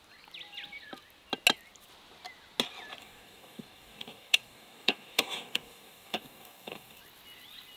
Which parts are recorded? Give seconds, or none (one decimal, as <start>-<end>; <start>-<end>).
0.0-3.0; 7.0-7.8